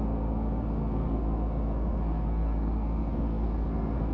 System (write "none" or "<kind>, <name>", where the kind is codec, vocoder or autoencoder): codec, SNAC